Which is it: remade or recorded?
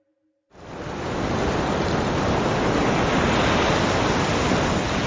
recorded